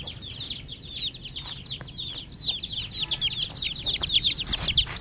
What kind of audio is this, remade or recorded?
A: recorded